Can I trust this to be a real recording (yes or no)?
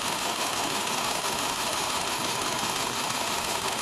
no